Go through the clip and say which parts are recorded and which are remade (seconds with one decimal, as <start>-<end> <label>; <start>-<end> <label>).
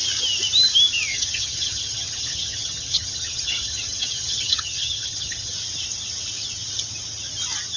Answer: 0.0-1.1 recorded; 1.1-5.5 remade; 5.5-7.8 recorded